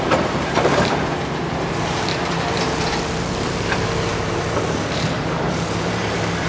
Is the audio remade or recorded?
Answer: remade